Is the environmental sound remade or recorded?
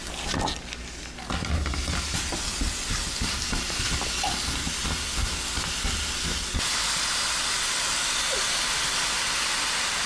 recorded